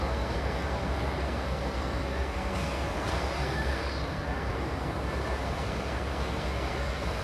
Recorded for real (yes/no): no